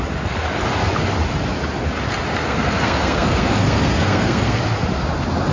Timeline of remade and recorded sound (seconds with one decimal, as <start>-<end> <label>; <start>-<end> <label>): 0.0-2.4 recorded; 2.4-4.6 remade; 4.6-5.5 recorded